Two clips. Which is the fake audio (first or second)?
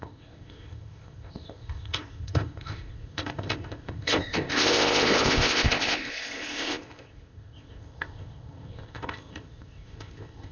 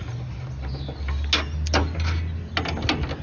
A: first